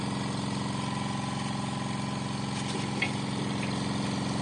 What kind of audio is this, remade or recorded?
recorded